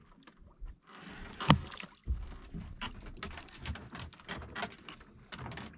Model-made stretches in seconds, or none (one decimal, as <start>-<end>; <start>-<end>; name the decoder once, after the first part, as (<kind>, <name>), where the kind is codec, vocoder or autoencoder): none